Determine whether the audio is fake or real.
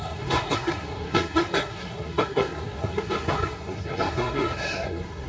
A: fake